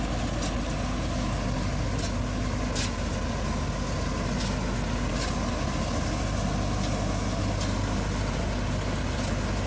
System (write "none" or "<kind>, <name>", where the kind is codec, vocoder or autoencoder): none